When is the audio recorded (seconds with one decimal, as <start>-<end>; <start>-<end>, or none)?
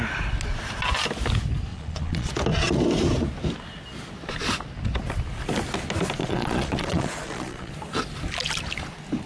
0.0-1.7; 2.3-6.2; 7.7-9.3